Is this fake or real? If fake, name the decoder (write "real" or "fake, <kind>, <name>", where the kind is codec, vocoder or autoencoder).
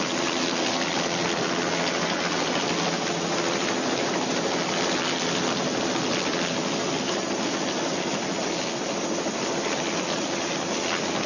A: real